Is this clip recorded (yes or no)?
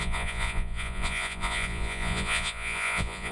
no